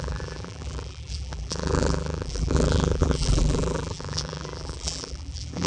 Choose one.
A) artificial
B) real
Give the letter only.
A